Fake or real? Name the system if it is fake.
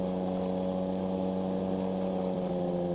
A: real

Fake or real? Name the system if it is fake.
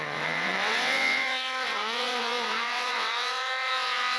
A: fake, vocoder, WaveNeXt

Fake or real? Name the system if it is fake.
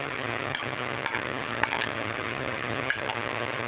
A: fake, vocoder, HiFi-GAN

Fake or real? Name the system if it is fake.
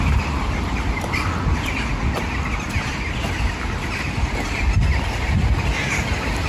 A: real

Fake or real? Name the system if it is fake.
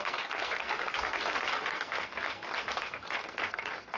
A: fake, codec, SNAC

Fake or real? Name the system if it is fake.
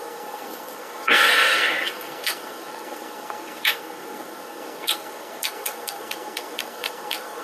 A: fake, codec, SNAC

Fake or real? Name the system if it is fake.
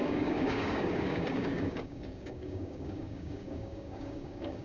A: fake, codec, DAC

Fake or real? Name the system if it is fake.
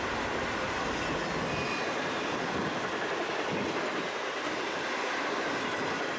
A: real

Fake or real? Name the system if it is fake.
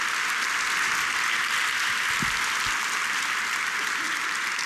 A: real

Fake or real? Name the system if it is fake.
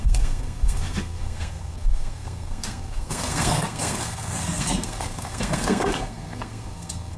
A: fake, codec, SNAC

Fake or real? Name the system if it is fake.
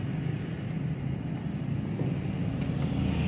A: real